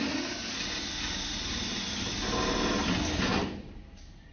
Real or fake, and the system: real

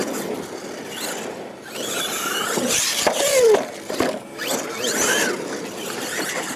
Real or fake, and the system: real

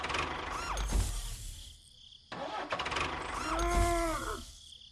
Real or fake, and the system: real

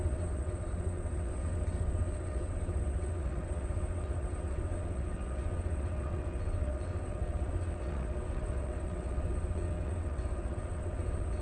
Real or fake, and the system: fake, vocoder, WaveNeXt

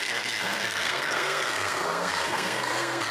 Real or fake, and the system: fake, codec, SNAC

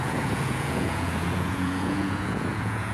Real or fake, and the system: fake, vocoder, Vocos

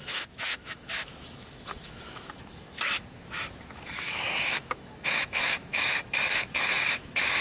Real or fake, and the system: fake, autoencoder, DAC-VAE